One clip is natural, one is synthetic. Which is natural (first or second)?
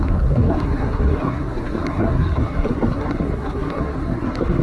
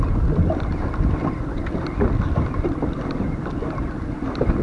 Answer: second